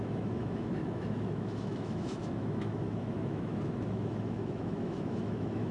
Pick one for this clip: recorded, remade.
remade